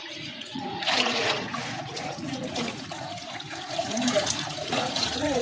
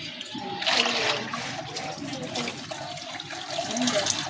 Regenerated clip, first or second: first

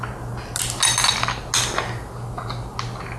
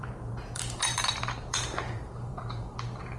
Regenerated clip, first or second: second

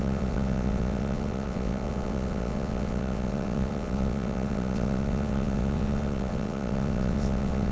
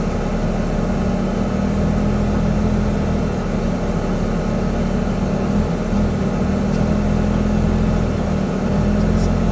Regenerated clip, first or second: first